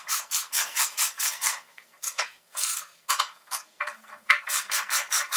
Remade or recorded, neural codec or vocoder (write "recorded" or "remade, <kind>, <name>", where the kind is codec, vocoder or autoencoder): remade, codec, SNAC